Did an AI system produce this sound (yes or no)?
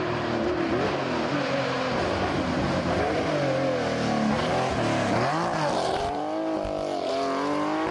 no